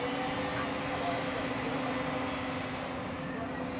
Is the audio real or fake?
real